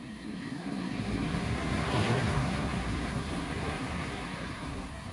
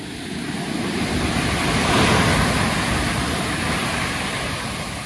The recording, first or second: second